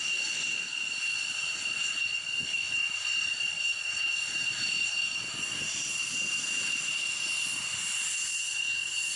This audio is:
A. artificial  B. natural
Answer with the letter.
B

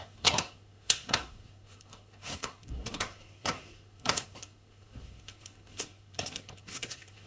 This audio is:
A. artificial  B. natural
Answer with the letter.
A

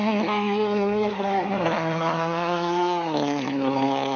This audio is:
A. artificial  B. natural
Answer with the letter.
A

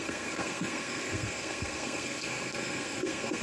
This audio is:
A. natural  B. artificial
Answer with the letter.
B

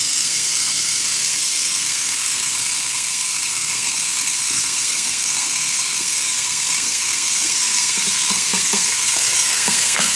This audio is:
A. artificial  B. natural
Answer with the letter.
A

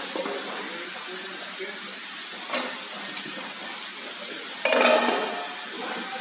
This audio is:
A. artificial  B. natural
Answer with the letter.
B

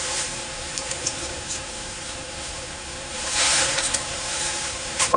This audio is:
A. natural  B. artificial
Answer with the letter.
B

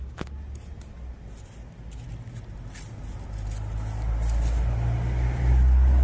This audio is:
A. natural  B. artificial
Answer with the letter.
A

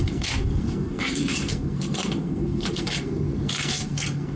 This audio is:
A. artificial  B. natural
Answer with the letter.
A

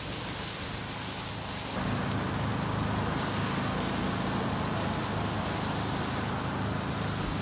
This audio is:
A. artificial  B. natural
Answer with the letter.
B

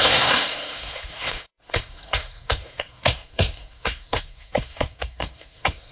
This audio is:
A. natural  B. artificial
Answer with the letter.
B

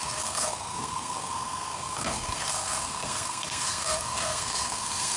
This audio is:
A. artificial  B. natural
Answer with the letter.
A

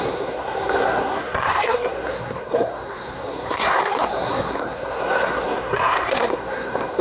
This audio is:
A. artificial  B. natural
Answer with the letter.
A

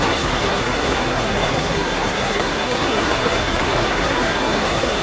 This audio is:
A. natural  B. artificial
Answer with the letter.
B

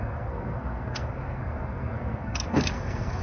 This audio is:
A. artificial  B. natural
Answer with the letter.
A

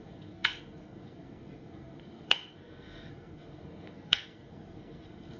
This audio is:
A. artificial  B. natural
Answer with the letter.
A